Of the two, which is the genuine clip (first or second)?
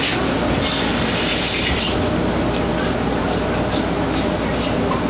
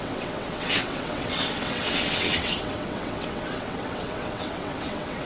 first